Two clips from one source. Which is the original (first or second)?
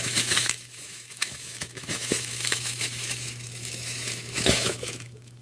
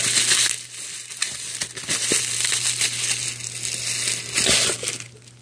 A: second